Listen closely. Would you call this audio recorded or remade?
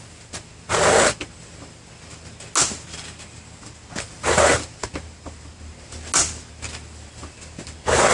recorded